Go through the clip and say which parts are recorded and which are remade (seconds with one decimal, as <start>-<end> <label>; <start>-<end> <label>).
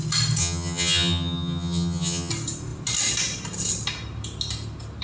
0.0-0.4 recorded; 0.4-2.3 remade; 2.3-5.0 recorded